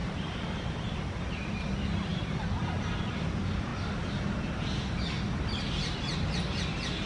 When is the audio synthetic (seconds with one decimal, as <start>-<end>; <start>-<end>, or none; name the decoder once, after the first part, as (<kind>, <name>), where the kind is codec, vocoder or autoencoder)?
0.0-1.7 (vocoder, BigVGAN v2); 2.1-2.6